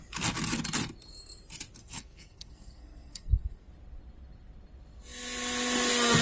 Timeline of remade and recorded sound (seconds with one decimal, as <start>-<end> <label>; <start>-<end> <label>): 0.0-1.8 recorded; 1.8-3.7 remade; 3.7-6.2 recorded